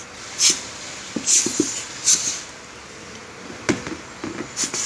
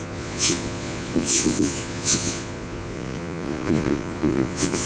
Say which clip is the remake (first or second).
second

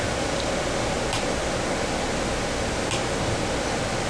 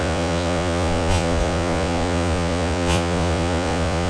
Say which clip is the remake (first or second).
second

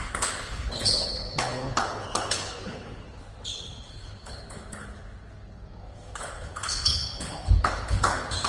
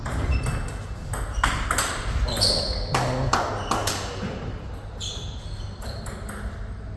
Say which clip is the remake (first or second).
first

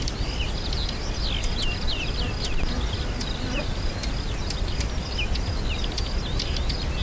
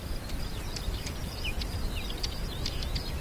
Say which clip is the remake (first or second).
second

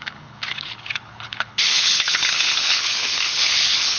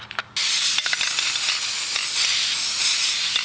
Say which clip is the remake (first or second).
first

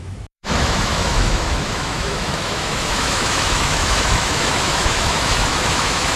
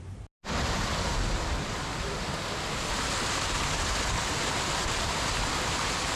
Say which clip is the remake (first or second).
first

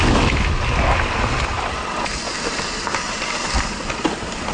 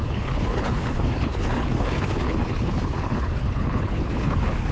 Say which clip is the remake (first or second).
second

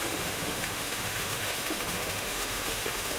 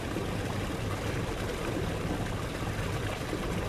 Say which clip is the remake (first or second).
first